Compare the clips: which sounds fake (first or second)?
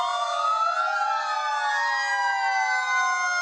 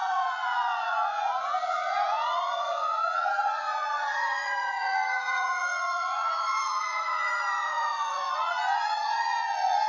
second